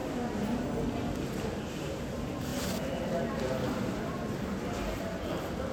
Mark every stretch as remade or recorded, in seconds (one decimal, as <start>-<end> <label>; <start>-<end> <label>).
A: 0.0-5.7 recorded